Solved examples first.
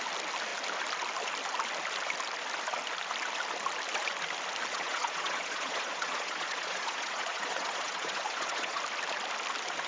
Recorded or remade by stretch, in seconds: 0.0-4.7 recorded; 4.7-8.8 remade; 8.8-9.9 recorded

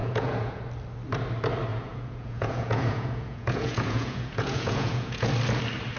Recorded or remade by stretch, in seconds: 0.0-0.6 remade; 0.6-1.7 recorded; 1.7-5.3 remade; 5.3-6.0 recorded

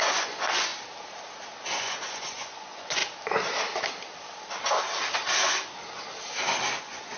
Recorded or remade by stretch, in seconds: 0.0-0.7 remade; 0.7-1.7 recorded; 1.7-3.0 remade; 3.0-6.8 recorded; 6.8-7.2 remade

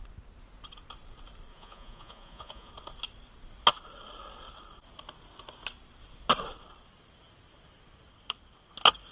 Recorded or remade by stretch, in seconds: 0.0-1.5 recorded; 1.5-2.7 remade; 2.7-9.1 recorded

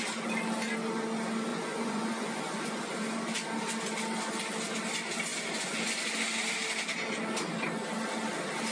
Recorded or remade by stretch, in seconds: 0.0-1.5 recorded; 1.5-2.8 remade; 2.8-5.3 recorded; 5.3-6.0 remade; 6.0-8.7 recorded

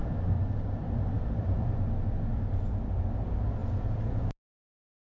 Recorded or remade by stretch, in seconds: 0.0-3.6 recorded; 3.6-4.3 remade; 4.3-5.1 recorded

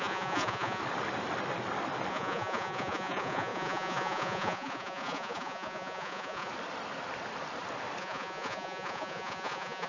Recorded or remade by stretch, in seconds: 0.0-0.8 remade; 0.8-2.1 recorded; 2.1-6.5 remade; 6.5-8.0 recorded; 8.0-9.9 remade

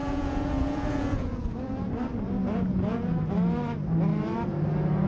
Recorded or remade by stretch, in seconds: 0.0-1.9 remade; 1.9-2.4 recorded; 2.4-3.3 remade; 3.3-5.1 recorded